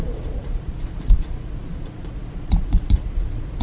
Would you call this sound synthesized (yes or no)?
yes